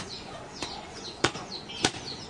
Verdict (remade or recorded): remade